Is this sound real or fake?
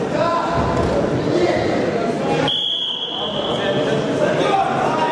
real